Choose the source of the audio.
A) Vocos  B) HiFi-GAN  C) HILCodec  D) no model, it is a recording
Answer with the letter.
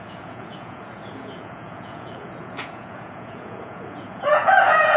A